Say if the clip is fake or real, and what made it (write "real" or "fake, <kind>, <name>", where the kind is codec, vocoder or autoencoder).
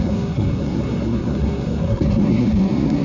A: fake, codec, SNAC